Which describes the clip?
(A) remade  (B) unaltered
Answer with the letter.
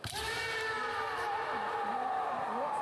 A